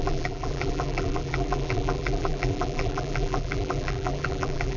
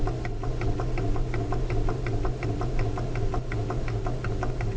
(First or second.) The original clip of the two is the second